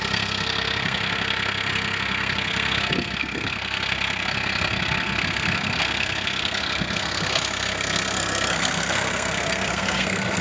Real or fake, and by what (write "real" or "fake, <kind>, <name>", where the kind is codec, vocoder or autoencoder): fake, codec, SNAC